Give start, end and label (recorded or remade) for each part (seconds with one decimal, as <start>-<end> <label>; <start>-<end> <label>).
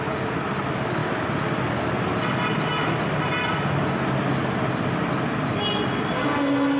0.0-6.8 recorded